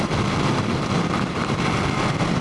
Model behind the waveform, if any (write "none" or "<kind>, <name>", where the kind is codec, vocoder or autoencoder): none